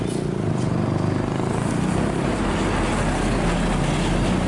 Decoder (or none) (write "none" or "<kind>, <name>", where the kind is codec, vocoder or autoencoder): none